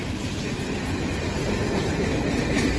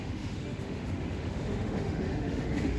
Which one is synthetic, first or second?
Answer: second